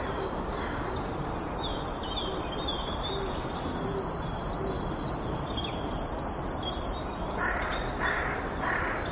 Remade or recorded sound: recorded